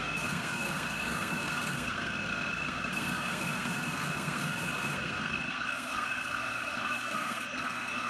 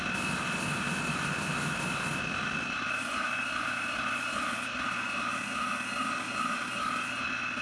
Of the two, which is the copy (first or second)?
first